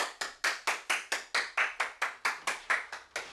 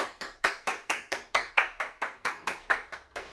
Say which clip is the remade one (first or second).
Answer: second